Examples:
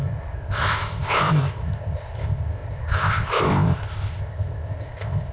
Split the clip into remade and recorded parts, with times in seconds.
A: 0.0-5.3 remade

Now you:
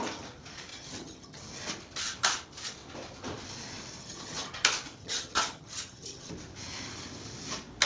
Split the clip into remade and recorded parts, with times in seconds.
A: 0.0-0.7 recorded; 0.7-1.4 remade; 1.4-4.0 recorded; 4.0-4.5 remade; 4.5-5.0 recorded; 5.0-6.3 remade; 6.3-7.9 recorded